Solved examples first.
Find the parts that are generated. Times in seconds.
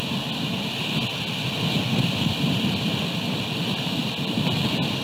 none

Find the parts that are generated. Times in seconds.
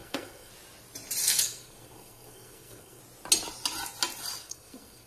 0.0-0.5; 1.2-3.0; 4.4-5.1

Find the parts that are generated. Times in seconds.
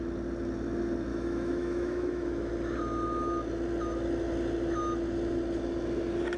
1.1-2.5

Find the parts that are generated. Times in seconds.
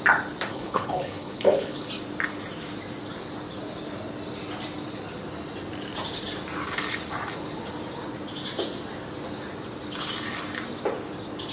0.5-1.9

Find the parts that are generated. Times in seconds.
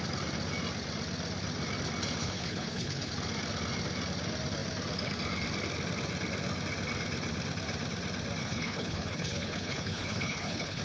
2.2-3.1; 8.4-10.8